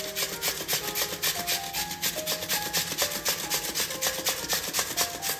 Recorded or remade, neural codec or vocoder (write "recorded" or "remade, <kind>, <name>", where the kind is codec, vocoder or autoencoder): recorded